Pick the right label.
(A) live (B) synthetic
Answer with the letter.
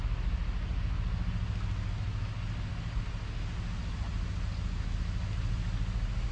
A